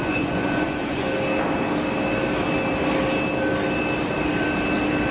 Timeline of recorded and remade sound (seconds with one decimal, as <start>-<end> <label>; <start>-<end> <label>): 0.0-1.1 remade; 1.1-5.1 recorded